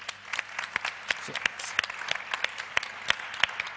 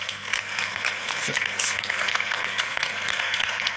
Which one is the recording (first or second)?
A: first